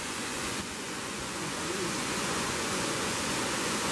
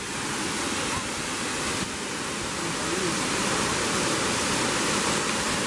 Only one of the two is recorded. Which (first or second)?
second